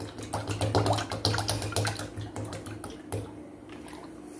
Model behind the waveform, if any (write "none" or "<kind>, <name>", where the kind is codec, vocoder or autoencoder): none